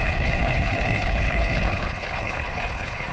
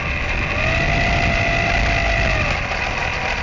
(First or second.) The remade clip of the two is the first